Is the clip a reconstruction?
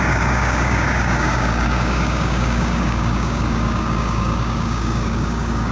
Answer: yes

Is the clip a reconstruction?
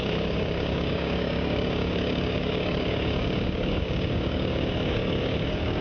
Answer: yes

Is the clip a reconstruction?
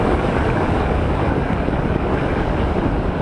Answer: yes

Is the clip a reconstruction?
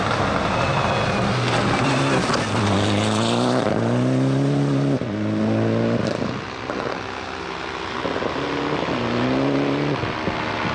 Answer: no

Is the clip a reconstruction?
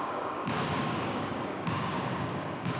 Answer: yes